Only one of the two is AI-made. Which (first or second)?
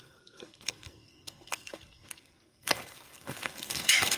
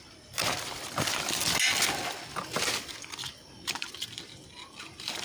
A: first